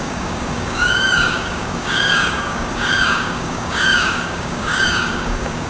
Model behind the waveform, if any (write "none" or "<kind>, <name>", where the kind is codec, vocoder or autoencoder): codec, DAC